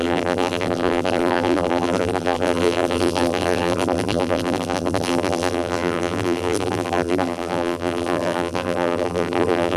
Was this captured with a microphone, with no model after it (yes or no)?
no